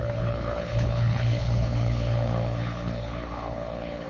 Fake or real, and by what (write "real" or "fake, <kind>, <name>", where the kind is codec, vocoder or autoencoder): fake, codec, HILCodec